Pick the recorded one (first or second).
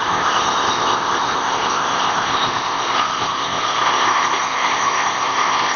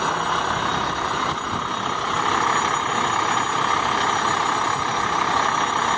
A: second